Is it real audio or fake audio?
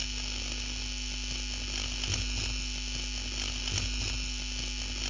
real